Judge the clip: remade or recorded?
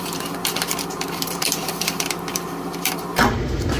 remade